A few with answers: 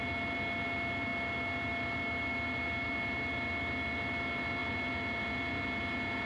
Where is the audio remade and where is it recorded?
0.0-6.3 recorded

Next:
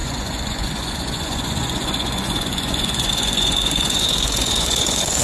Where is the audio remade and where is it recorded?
0.0-5.2 remade